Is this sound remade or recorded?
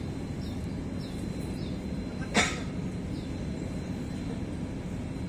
recorded